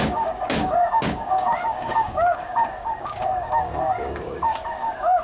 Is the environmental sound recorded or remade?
remade